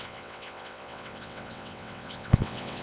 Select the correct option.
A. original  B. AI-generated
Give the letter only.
B